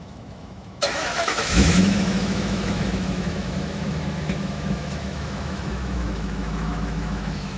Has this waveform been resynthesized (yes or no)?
yes